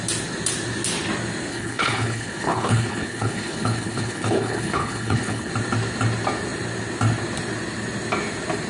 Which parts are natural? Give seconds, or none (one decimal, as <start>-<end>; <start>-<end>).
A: 0.0-1.5; 5.5-8.7